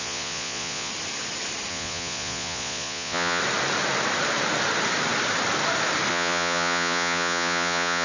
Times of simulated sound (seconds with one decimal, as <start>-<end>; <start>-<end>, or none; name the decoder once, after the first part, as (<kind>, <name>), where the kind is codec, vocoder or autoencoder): 0.0-0.9 (vocoder, Vocos); 1.7-3.4; 6.1-8.0

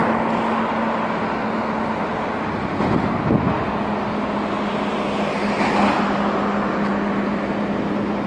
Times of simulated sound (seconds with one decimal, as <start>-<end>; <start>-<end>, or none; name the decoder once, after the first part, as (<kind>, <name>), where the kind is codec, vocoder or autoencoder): none

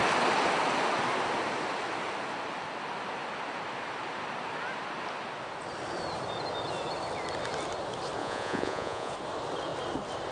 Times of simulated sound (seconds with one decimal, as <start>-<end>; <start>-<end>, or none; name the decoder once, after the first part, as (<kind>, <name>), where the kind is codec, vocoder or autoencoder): 8.2-9.1 (vocoder, Vocos)

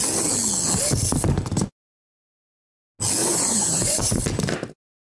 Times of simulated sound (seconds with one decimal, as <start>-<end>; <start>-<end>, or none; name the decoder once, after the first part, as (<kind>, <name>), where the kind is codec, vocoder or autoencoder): 3.2-4.0 (vocoder, Vocos)

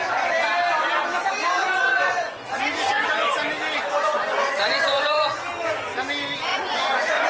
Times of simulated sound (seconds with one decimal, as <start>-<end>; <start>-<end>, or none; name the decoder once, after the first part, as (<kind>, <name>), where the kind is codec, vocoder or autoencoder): 1.6-3.1 (vocoder, Vocos); 4.0-5.5; 6.5-7.3

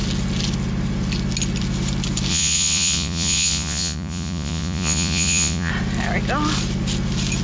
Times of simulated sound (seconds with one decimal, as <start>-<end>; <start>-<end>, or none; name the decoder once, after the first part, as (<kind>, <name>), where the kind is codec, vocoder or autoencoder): 2.3-5.7 (vocoder, Vocos)

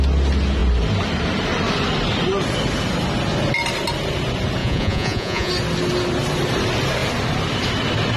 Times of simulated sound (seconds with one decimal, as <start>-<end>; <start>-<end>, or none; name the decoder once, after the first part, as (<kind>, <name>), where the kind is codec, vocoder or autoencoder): 4.6-5.5 (vocoder, Vocos)

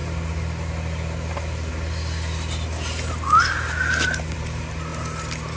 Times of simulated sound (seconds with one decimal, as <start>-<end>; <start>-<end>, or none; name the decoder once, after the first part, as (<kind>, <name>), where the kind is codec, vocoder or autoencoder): none